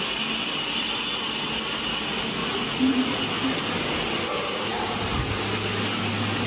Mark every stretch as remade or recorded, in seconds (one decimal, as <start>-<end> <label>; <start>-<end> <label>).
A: 0.0-2.4 recorded; 2.4-3.2 remade; 3.2-6.5 recorded

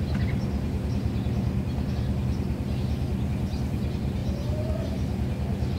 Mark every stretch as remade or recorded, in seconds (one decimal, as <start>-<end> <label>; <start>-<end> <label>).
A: 0.0-5.8 recorded

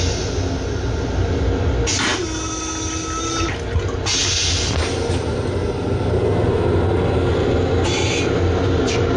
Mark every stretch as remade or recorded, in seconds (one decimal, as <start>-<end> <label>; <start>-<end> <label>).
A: 0.0-9.2 recorded

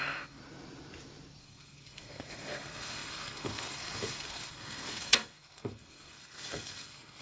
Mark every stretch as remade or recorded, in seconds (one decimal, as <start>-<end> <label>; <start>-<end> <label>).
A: 0.0-0.4 remade; 0.4-1.4 recorded; 1.4-7.2 remade

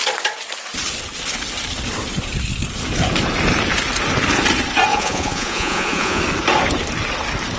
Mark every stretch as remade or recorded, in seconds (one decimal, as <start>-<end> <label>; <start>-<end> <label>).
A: 0.0-4.9 recorded; 4.9-6.2 remade; 6.2-7.6 recorded